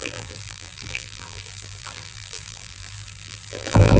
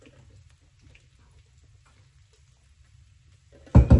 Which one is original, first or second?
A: second